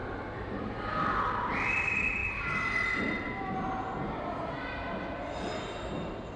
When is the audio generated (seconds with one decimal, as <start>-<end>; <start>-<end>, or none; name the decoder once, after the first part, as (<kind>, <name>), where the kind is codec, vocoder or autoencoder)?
0.5-2.2 (vocoder, BigVGAN v2); 6.0-6.4